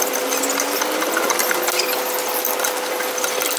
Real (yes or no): yes